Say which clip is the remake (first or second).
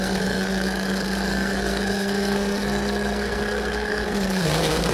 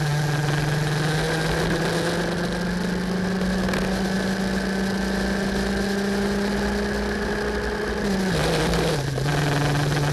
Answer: first